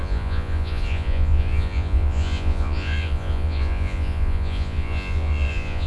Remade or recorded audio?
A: remade